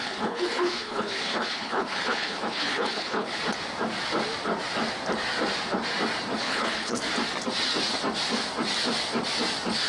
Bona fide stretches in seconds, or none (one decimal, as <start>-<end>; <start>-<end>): 3.4-6.4; 7.0-9.9